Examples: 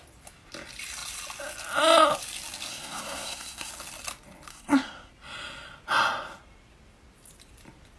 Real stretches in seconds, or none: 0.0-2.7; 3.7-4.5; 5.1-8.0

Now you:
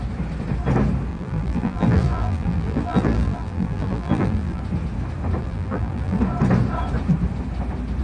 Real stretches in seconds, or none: 0.0-1.1; 4.6-5.4; 6.2-8.0

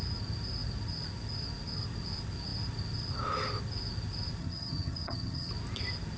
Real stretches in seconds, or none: 0.0-4.4; 5.5-6.2

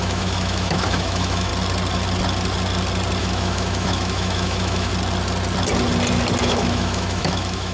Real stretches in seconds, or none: 1.5-3.2; 4.9-6.4

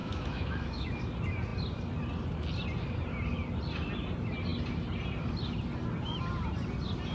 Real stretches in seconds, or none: 1.0-7.1

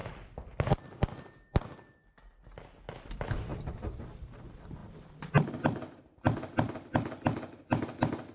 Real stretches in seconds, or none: 0.0-8.3